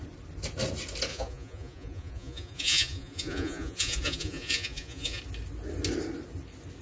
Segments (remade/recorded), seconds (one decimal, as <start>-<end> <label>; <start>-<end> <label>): 0.0-1.1 recorded; 1.1-5.2 remade; 5.2-6.8 recorded